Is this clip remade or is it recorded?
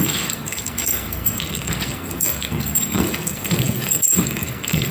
remade